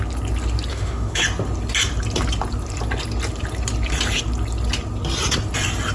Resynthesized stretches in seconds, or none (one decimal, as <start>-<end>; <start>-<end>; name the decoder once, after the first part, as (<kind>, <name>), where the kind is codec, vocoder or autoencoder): 0.7-1.2 (autoencoder, DAC-VAE)